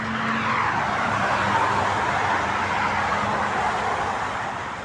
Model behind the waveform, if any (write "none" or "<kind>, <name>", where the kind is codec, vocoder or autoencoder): none